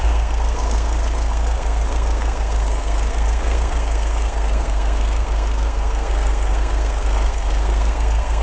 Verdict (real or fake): fake